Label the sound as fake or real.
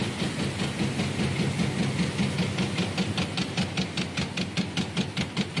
real